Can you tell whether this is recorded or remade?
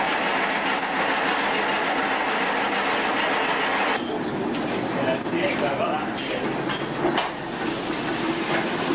recorded